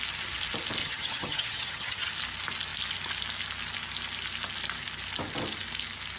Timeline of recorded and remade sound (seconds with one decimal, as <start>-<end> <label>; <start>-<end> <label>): 0.0-0.8 recorded; 0.8-2.1 remade; 2.1-6.2 recorded

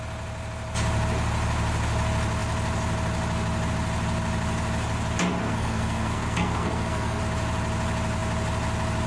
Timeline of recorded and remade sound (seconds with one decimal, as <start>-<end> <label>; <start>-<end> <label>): 0.0-5.4 recorded; 5.4-7.2 remade; 7.2-9.1 recorded